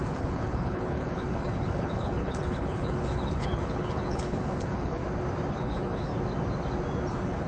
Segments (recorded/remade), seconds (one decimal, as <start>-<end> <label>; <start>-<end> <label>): 0.0-5.0 remade; 5.0-5.5 recorded; 5.5-6.1 remade; 6.1-7.1 recorded; 7.1-7.5 remade